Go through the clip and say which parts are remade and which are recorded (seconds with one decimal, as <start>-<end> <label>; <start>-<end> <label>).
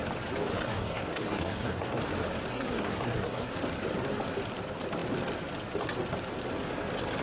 0.0-0.5 recorded; 0.5-2.0 remade; 2.0-2.5 recorded; 2.5-3.5 remade; 3.5-7.2 recorded